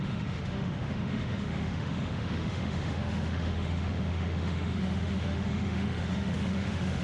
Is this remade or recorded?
remade